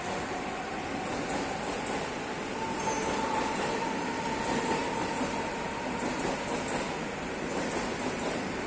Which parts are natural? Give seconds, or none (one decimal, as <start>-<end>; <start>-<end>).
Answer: 0.0-8.7

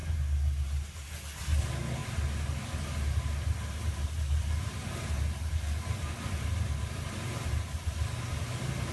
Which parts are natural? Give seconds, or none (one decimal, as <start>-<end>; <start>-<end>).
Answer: 0.0-8.9

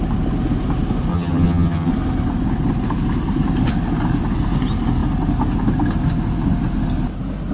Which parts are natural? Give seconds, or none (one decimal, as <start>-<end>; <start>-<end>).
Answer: 0.0-1.1; 1.9-7.5

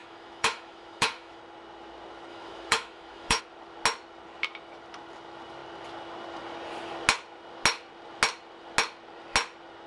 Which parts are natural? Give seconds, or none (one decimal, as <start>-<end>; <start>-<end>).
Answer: 1.4-2.3; 3.4-9.9

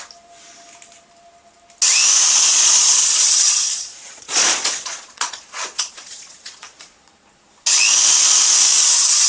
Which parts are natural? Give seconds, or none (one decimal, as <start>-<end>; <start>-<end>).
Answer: 0.0-2.5; 7.5-9.3

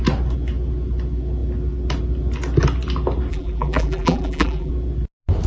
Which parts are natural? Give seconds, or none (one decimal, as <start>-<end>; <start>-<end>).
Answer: 0.0-3.3; 4.7-5.5